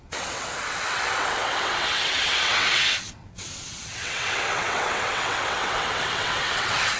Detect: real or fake fake